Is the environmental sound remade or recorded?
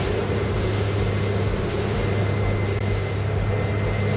recorded